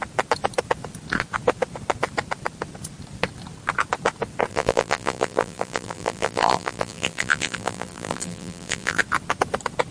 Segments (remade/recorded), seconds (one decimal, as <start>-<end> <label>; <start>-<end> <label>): 0.0-4.5 recorded; 4.5-9.0 remade; 9.0-9.9 recorded